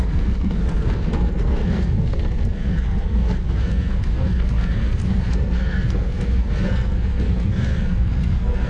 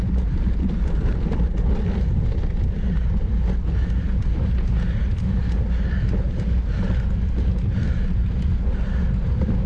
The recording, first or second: second